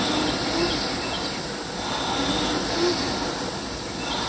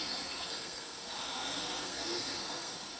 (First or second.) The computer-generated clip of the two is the second